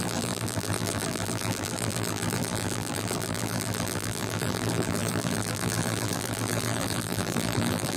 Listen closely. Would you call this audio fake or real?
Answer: fake